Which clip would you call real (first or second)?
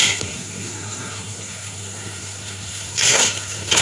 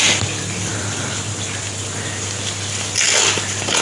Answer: second